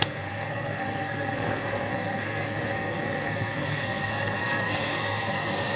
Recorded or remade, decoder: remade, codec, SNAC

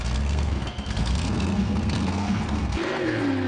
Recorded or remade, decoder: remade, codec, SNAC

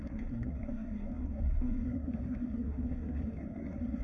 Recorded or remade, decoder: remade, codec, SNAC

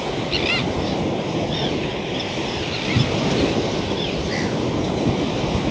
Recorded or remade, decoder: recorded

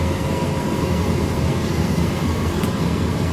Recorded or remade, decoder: remade, codec, SNAC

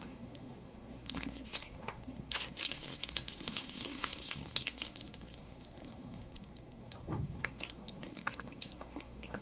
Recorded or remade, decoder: remade, codec, SNAC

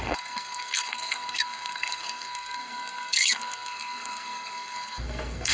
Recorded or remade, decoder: remade, codec, SNAC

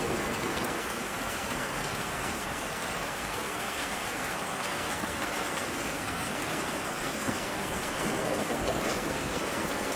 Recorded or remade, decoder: remade, codec, SNAC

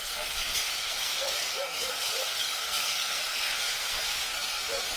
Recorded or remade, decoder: remade, codec, SNAC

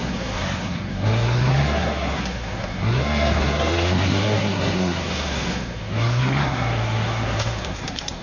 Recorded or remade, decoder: remade, codec, SNAC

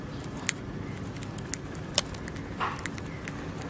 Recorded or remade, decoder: recorded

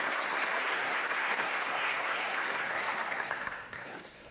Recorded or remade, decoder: remade, codec, SNAC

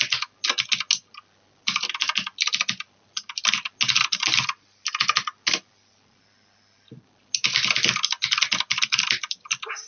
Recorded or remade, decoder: recorded